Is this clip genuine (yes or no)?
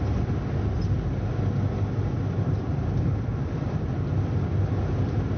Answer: yes